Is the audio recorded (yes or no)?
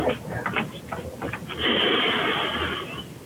yes